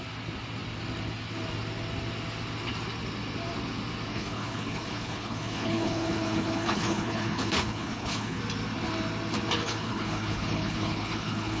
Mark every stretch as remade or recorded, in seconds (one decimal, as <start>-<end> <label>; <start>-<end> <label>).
0.0-4.1 recorded; 4.1-8.4 remade; 8.4-9.6 recorded; 9.6-11.6 remade